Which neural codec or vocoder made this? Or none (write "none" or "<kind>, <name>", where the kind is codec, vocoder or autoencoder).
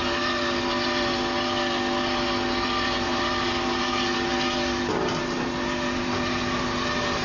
none